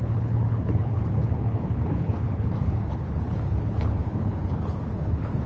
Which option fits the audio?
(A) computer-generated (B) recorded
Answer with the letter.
A